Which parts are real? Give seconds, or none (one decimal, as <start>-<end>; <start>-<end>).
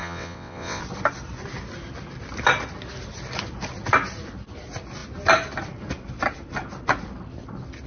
0.8-7.9